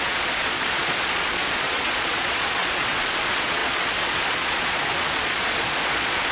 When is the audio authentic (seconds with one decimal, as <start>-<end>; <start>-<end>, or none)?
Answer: none